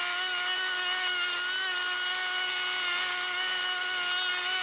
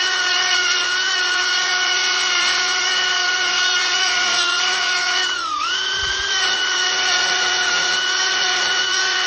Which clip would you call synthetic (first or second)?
second